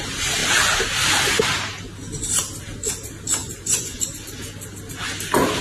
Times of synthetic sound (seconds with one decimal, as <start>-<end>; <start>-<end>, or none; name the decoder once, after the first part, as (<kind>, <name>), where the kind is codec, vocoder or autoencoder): 3.4-4.0 (vocoder, Vocos)